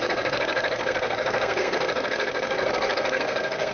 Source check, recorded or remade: remade